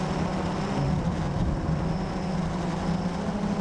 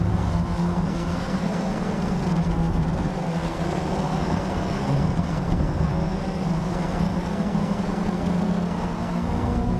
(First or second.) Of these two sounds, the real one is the first